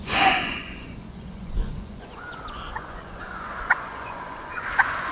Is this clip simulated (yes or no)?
yes